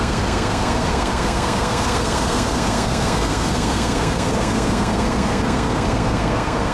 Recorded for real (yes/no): no